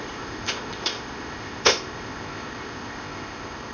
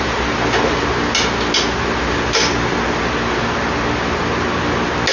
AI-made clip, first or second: first